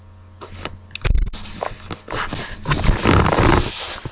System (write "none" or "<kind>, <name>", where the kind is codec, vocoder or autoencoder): none